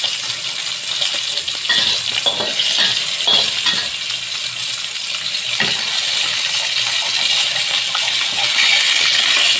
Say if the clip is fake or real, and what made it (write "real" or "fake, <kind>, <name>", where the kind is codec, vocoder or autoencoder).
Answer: real